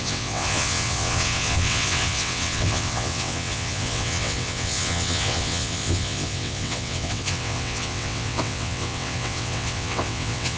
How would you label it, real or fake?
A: fake